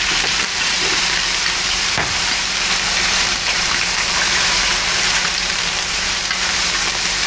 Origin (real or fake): fake